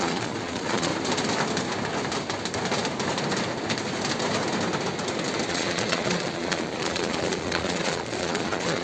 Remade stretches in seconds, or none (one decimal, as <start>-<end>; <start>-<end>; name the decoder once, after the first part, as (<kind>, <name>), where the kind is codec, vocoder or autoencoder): 0.0-0.9 (vocoder, Vocos); 5.5-8.8